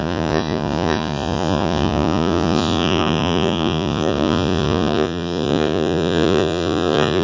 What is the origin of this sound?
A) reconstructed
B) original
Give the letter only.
A